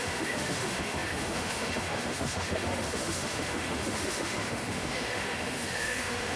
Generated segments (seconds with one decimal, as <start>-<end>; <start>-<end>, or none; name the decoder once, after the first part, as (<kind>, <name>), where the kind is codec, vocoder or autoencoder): 0.0-6.4 (autoencoder, DAC-VAE)